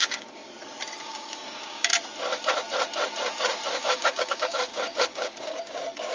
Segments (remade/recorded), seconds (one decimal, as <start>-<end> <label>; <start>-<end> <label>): 0.0-0.4 remade; 0.4-1.0 recorded; 1.0-1.9 remade; 1.9-3.8 recorded; 3.8-6.1 remade